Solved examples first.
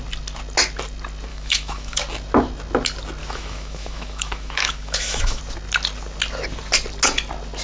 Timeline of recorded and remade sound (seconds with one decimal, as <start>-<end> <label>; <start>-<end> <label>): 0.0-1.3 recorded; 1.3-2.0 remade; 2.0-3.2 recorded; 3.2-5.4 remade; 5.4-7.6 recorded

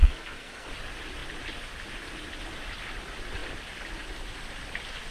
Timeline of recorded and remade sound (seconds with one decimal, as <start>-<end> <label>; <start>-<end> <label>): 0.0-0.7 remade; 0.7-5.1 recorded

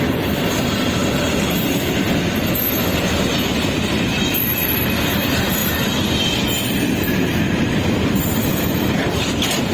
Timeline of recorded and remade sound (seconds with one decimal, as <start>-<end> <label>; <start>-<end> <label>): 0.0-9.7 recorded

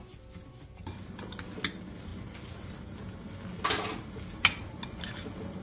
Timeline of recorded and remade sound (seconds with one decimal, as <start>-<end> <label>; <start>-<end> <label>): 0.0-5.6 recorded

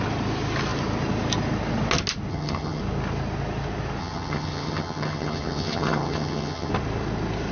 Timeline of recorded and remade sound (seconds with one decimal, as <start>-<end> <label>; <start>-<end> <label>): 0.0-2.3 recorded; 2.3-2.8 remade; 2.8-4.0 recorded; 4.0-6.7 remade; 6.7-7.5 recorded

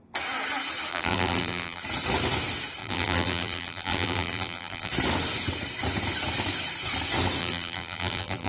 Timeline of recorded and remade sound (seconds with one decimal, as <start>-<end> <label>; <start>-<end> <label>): 0.0-0.9 recorded; 0.9-1.8 remade; 1.8-2.8 recorded; 2.8-4.9 remade; 4.9-7.4 recorded; 7.4-8.5 remade

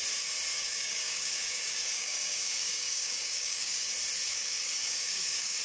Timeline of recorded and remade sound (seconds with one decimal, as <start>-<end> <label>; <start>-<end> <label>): 0.0-0.5 recorded; 0.5-3.9 remade; 3.9-4.3 recorded; 4.3-5.6 remade

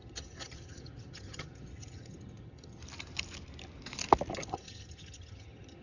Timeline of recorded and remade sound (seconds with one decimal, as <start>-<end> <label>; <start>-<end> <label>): 0.0-2.8 remade; 2.8-4.3 recorded; 4.3-5.8 remade